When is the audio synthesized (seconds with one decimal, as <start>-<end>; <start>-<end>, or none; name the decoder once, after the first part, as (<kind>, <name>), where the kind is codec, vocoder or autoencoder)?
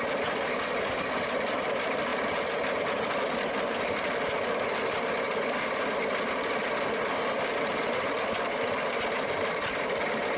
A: 5.3-6.6 (vocoder, BigVGAN v2)